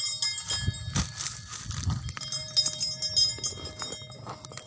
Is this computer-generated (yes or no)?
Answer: no